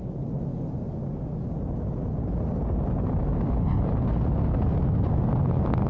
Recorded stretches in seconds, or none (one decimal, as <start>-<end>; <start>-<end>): 0.0-5.9